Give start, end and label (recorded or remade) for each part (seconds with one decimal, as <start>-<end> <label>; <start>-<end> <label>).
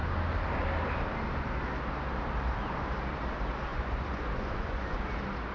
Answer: 0.0-3.7 recorded; 3.7-5.0 remade; 5.0-5.5 recorded